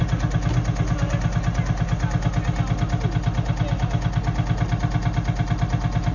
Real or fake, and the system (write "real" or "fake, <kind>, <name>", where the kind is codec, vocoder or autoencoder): real